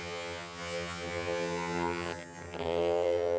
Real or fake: fake